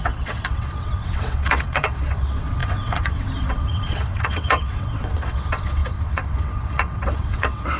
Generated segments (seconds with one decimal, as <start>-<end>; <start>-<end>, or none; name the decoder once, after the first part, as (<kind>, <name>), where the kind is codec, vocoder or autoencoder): 0.0-7.8 (vocoder, WaveNeXt)